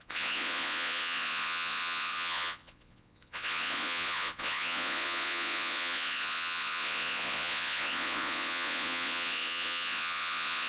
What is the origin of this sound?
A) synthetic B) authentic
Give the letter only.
A